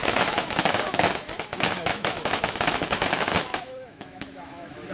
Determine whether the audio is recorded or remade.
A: remade